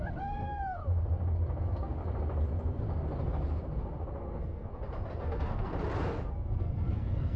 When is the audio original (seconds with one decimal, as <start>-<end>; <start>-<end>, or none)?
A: 0.8-1.6; 2.0-4.2; 4.7-5.2; 5.7-6.3

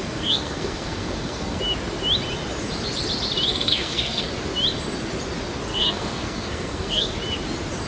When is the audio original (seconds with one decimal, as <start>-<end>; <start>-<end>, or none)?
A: 1.6-3.5; 4.3-5.7; 7.1-7.9

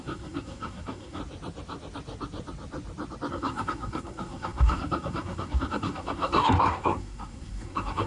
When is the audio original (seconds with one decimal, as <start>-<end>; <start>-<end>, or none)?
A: 1.2-3.3

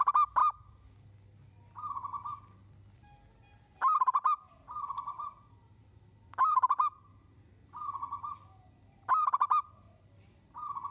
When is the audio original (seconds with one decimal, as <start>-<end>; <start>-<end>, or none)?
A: 0.0-10.9